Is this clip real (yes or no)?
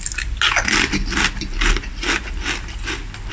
yes